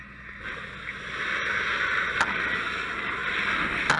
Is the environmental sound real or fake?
real